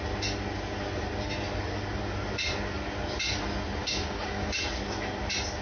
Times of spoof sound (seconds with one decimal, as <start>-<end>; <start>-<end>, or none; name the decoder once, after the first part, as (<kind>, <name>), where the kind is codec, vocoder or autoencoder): 3.8-4.6 (codec, DAC)